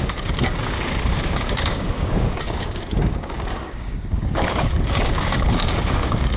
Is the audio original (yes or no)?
no